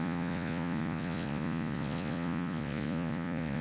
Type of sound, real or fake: fake